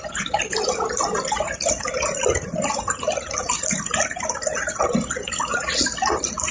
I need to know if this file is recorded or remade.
recorded